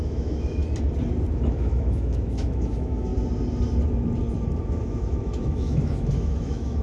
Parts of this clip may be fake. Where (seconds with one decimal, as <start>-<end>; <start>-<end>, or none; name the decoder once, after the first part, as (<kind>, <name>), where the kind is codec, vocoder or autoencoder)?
0.0-0.6 (autoencoder, DAC-VAE); 1.3-3.1; 4.6-6.8